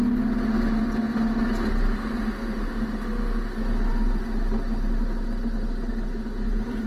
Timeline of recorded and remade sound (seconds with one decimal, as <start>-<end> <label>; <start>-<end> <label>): 0.0-6.9 recorded